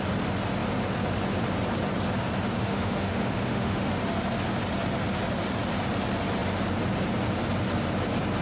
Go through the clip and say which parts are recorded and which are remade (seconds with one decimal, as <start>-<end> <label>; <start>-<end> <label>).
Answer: 0.0-2.6 recorded; 2.6-3.9 remade; 3.9-8.4 recorded